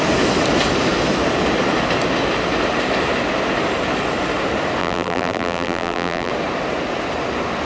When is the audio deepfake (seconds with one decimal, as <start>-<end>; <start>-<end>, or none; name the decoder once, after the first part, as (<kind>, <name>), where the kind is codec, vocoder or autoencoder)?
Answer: 4.8-6.3 (vocoder, BigVGAN v2)